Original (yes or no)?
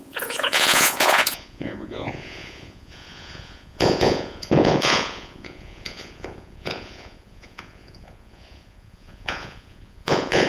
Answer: no